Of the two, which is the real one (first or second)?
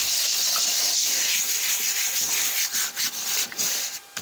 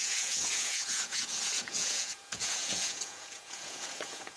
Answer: first